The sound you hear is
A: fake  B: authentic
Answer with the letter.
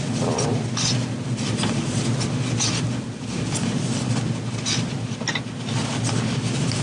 B